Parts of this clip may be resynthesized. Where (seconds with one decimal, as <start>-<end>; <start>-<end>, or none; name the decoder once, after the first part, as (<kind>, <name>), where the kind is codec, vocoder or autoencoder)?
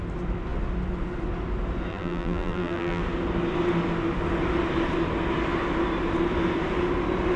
1.9-3.0 (vocoder, BigVGAN v2)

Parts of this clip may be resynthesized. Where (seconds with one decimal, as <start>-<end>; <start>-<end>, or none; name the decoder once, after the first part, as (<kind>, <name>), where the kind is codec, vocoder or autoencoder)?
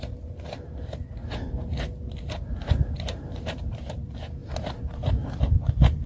none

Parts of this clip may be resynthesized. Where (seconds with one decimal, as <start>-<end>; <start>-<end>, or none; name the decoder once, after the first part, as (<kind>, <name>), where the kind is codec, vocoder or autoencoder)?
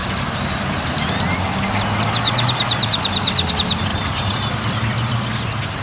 3.9-5.3 (vocoder, BigVGAN v2)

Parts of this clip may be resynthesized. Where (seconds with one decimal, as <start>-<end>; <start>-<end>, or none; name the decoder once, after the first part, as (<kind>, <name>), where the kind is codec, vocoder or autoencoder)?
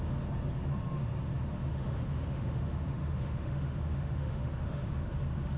1.7-5.1 (autoencoder, DAC-VAE)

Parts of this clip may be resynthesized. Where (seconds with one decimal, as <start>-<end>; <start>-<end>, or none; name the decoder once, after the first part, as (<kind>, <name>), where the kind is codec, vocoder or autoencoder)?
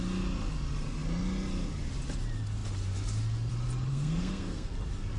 3.9-4.7 (codec, SNAC)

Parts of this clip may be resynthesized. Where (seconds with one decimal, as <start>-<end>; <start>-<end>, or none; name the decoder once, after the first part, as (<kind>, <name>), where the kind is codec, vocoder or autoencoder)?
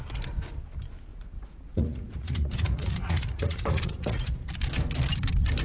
1.1-4.5 (vocoder, Vocos)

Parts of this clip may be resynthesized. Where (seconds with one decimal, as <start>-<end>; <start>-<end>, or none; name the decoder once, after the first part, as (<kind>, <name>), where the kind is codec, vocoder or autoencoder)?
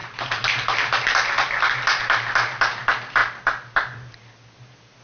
none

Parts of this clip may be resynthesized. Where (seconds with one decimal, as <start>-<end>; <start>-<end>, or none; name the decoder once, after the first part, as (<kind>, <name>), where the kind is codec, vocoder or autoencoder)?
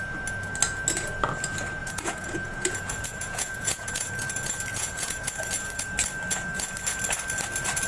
1.8-4.1 (vocoder, Vocos); 4.7-5.4